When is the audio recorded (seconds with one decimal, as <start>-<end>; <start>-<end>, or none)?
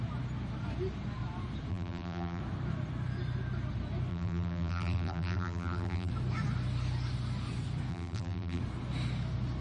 0.0-1.7; 2.4-4.1; 6.1-7.9; 8.6-9.6